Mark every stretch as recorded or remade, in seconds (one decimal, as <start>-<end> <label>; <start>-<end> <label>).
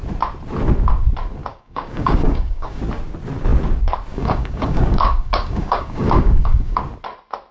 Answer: 0.0-1.5 recorded; 1.5-2.8 remade; 2.8-4.1 recorded; 4.1-6.8 remade; 6.8-7.5 recorded